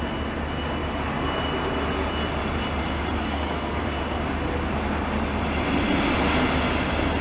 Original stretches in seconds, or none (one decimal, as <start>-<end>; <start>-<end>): 0.0-3.3; 3.9-7.2